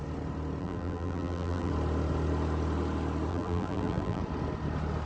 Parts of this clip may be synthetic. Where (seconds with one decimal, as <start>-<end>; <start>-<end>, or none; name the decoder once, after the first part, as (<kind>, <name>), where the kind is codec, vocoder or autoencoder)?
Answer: 0.6-1.7 (vocoder, BigVGAN v2); 3.3-4.2